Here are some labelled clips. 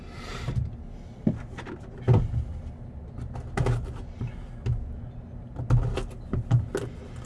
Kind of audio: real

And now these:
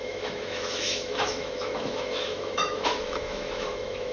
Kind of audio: fake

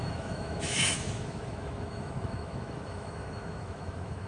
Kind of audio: fake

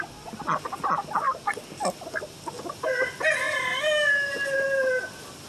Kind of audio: real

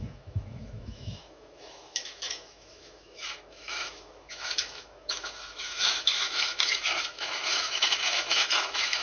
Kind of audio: fake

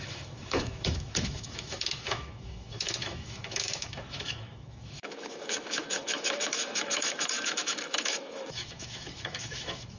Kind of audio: fake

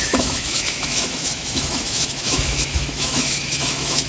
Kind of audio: fake